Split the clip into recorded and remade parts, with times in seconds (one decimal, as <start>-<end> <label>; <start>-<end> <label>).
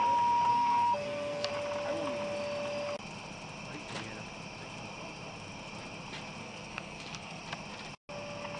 0.0-0.5 recorded; 0.5-1.5 remade; 1.5-6.4 recorded; 6.4-7.4 remade; 7.4-8.6 recorded